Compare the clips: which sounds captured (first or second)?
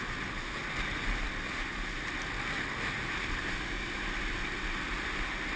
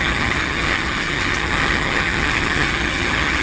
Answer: first